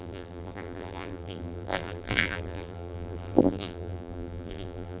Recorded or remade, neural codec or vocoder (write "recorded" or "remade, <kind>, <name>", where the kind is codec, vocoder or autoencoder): remade, vocoder, BigVGAN v2